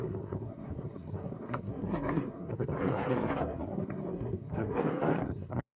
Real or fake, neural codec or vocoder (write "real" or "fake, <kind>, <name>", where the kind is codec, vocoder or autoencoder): fake, codec, SNAC